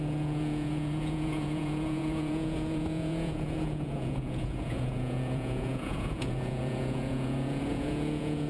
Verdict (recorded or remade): remade